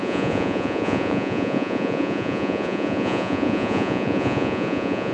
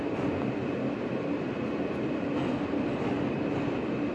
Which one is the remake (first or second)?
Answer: first